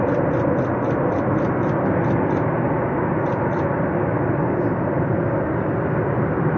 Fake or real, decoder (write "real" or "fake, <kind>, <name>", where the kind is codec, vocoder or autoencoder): real